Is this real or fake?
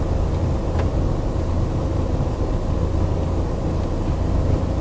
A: real